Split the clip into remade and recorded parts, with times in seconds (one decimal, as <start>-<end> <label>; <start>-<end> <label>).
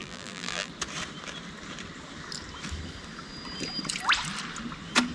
0.0-0.7 remade; 0.7-5.1 recorded